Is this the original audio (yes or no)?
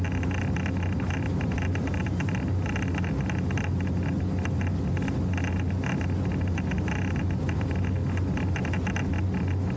yes